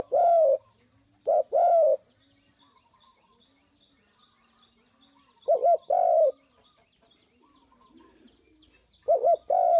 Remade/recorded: recorded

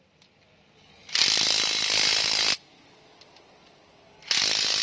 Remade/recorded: recorded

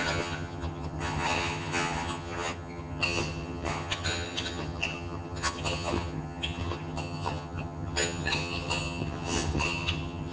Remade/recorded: remade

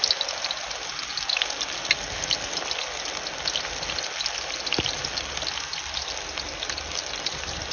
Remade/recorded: recorded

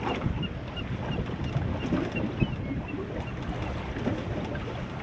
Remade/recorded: recorded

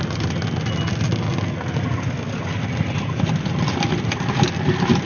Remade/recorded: recorded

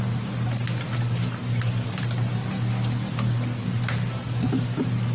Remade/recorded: recorded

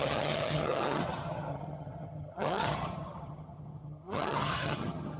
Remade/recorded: remade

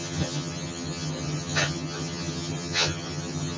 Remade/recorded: remade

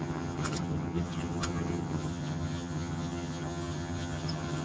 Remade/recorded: remade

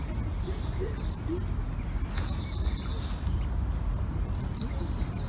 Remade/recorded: recorded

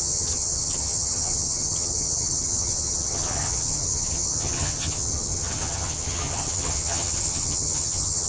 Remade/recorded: remade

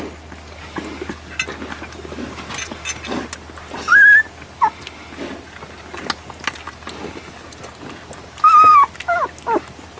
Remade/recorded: recorded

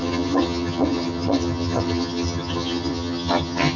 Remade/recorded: remade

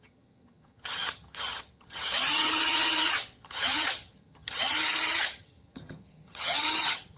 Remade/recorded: remade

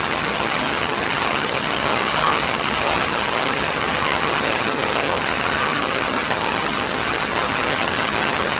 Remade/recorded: remade